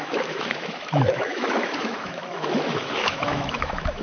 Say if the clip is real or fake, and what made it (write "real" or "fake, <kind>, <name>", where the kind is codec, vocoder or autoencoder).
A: fake, autoencoder, DAC-VAE